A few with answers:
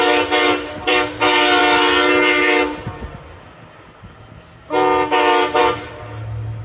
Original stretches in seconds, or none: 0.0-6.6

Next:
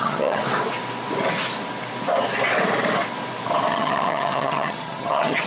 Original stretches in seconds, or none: 0.4-3.7

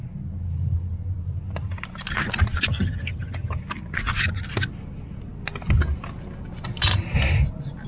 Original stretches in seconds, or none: 0.0-2.7; 3.6-7.9

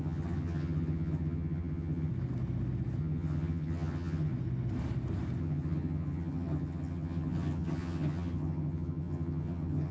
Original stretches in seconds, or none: 2.1-3.0; 4.3-5.4